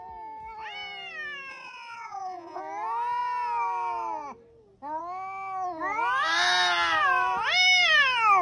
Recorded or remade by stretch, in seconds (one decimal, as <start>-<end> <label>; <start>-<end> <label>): 0.0-1.5 recorded; 1.5-2.6 remade; 2.6-8.4 recorded